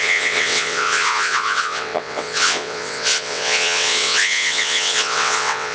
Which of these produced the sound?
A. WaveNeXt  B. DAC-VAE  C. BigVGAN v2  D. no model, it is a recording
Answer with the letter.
A